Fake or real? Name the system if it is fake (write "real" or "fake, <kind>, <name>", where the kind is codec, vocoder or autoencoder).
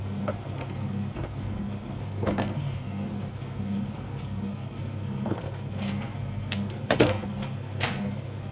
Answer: fake, codec, SNAC